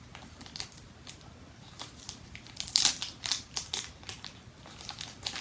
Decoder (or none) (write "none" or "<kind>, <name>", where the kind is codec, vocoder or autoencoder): none